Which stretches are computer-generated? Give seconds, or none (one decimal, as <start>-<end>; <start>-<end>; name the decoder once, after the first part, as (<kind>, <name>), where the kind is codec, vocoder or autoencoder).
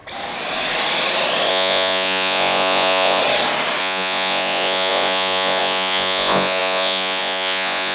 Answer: 1.5-3.2 (vocoder, Vocos); 3.8-7.9